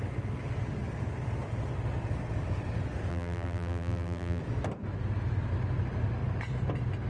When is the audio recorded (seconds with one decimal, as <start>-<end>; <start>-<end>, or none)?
0.0-3.1; 4.4-7.1